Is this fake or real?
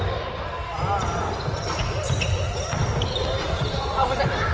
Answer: real